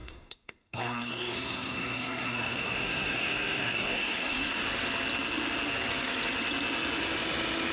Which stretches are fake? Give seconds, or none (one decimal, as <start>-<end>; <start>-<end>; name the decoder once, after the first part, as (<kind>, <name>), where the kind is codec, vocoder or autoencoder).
0.0-4.6 (codec, SNAC)